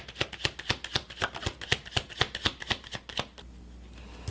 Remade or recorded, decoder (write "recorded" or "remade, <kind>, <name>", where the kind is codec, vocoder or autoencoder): recorded